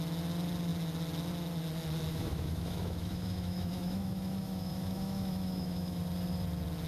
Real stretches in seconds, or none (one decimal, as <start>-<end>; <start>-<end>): 0.0-2.1; 6.0-6.9